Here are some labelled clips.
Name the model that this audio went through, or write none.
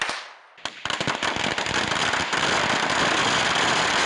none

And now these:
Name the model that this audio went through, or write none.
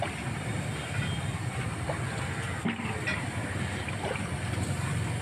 none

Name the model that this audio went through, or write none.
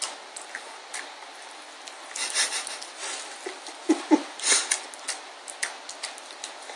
none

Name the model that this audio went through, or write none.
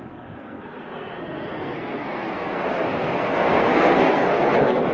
codec, SNAC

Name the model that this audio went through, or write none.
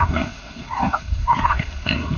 codec, SNAC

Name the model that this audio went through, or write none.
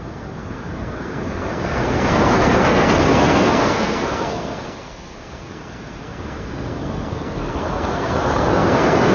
codec, SNAC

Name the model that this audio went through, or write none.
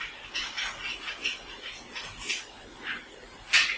none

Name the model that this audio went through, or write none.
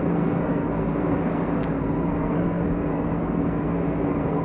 codec, SNAC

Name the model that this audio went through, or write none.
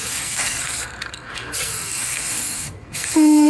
codec, SNAC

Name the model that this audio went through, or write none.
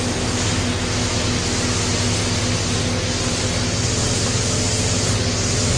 none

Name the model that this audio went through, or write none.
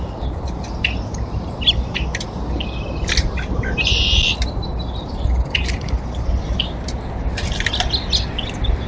none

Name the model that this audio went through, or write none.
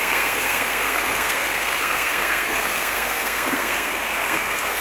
codec, SNAC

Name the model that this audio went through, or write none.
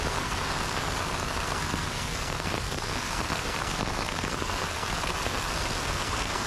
codec, SNAC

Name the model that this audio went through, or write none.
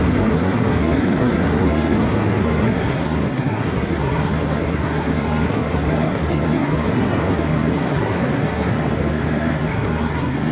codec, SNAC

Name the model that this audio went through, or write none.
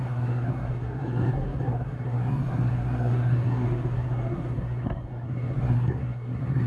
codec, SNAC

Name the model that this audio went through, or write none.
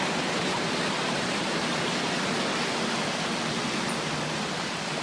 none